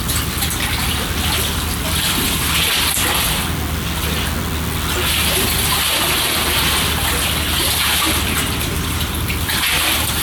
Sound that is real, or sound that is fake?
real